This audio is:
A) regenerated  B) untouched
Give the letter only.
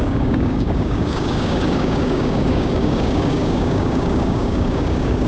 A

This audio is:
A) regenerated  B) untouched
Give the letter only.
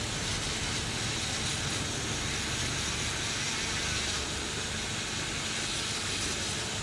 B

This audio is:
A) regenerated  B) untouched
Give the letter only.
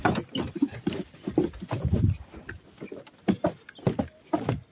B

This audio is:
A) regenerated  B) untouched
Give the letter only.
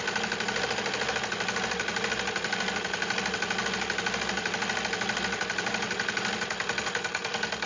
B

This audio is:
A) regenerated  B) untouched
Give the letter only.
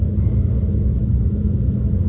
B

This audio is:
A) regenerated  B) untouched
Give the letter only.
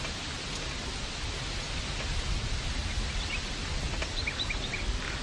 B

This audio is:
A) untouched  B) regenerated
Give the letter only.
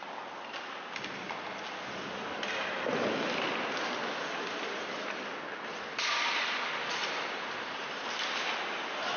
A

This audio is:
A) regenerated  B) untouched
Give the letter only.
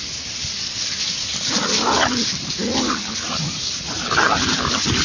B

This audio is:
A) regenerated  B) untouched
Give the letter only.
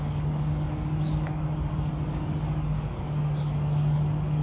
A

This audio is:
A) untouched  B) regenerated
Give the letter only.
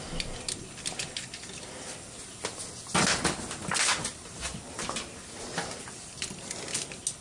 A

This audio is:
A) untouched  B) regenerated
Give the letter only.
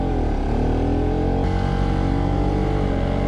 A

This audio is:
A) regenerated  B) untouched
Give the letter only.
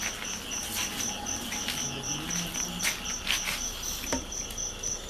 B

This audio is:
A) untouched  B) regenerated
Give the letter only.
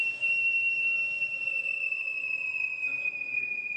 B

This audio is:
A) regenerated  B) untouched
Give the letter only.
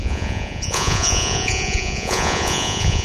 A